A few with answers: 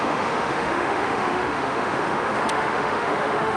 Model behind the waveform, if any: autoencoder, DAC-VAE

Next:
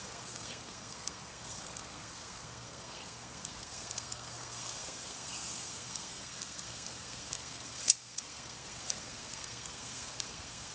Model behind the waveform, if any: codec, SNAC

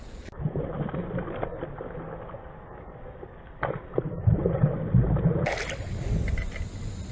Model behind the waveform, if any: none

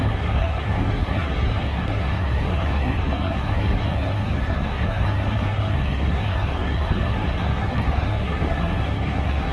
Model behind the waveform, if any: codec, SNAC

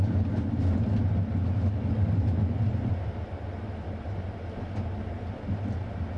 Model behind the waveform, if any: none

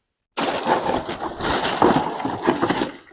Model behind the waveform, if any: none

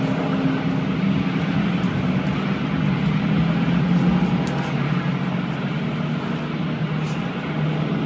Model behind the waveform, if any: none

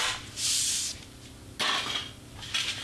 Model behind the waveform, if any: none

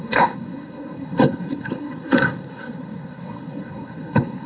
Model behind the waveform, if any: codec, SNAC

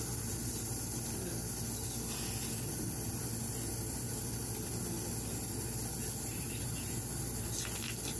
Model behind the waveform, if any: none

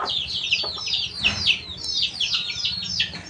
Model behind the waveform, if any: none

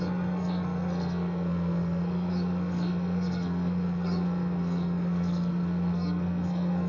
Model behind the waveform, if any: codec, SNAC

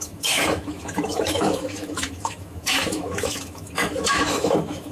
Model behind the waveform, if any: autoencoder, DAC-VAE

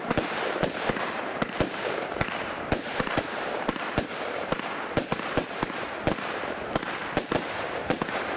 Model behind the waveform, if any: vocoder, BigVGAN v2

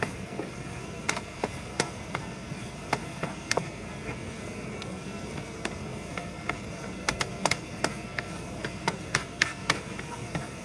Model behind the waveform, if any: codec, SNAC